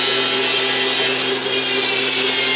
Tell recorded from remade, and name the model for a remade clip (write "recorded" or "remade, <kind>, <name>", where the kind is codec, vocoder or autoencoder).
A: recorded